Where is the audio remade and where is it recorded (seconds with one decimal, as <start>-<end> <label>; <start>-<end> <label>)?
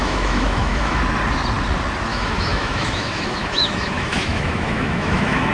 0.0-1.0 remade; 1.0-2.1 recorded; 2.1-5.5 remade